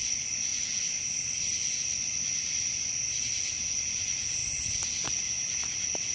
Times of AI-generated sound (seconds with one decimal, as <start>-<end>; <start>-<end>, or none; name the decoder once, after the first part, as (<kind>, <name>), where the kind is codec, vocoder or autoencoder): none